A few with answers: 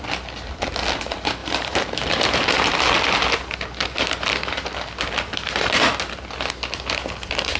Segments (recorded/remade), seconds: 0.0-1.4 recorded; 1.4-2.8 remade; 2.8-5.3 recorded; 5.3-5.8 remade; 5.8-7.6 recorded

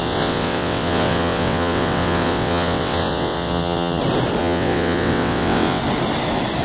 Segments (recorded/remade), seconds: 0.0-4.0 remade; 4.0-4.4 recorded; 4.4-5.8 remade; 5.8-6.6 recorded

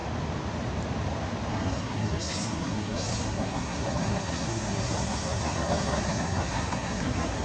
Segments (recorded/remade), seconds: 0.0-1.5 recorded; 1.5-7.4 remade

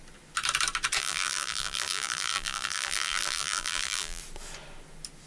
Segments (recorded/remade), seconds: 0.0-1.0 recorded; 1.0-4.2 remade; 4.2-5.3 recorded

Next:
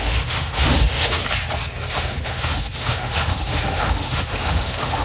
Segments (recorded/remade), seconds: 0.0-1.2 remade; 1.2-1.9 recorded; 1.9-5.0 remade

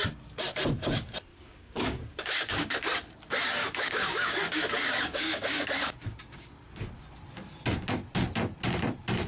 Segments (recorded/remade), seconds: 0.0-1.3 recorded; 1.3-2.7 remade; 2.7-3.6 recorded; 3.6-6.5 remade; 6.5-9.3 recorded

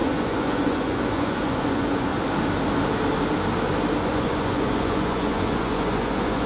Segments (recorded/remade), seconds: 0.0-2.1 remade; 2.1-4.0 recorded; 4.0-6.5 remade

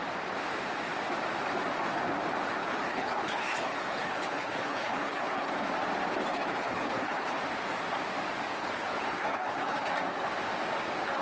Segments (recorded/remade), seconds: 0.0-2.6 recorded; 2.6-5.6 remade; 5.6-6.3 recorded; 6.3-7.4 remade; 7.4-8.6 recorded; 8.6-9.9 remade; 9.9-11.2 recorded